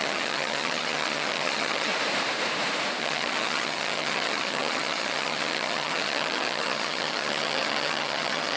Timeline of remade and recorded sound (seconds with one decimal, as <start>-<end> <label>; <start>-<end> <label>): 0.0-1.9 remade; 1.9-3.0 recorded; 3.0-8.6 remade